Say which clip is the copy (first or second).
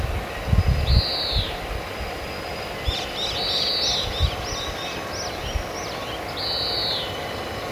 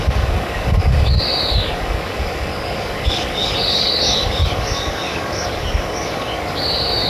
second